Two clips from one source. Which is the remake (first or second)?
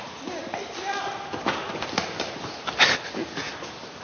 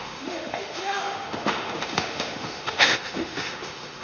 second